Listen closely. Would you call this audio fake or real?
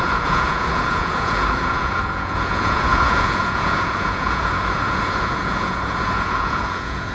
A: fake